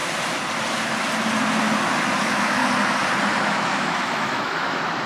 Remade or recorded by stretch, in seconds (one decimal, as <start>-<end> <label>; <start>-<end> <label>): 0.0-2.2 recorded; 2.2-2.6 remade; 2.6-3.4 recorded; 3.4-5.1 remade